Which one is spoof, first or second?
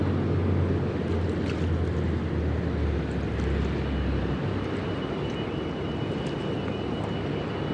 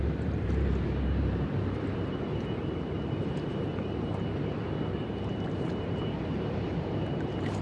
second